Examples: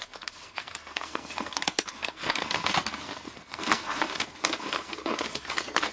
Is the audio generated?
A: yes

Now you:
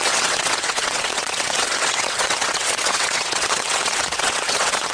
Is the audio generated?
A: yes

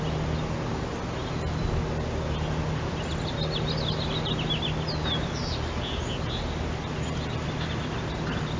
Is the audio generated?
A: no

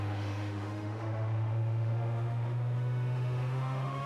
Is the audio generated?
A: yes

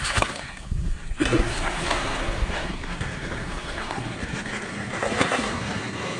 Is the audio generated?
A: yes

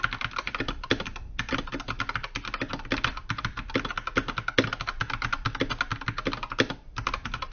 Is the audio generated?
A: no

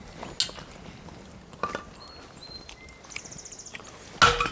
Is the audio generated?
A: no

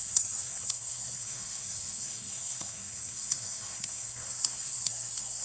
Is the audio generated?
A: yes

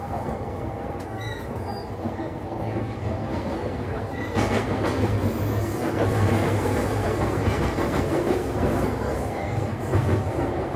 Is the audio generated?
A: yes